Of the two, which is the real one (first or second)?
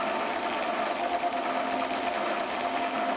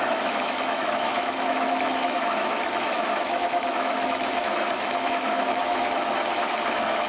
first